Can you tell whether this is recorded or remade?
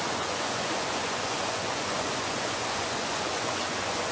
remade